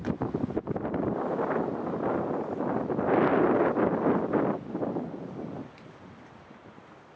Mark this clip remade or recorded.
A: recorded